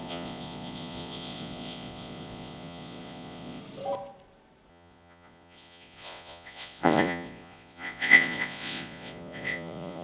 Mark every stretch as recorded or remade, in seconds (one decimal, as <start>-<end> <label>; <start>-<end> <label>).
0.0-3.6 remade; 3.6-4.7 recorded; 4.7-10.0 remade